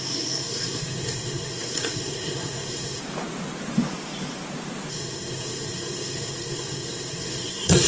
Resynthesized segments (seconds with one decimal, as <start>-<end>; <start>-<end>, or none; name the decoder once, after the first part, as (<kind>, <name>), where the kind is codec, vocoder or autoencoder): 0.0-3.0 (codec, SNAC); 4.9-7.9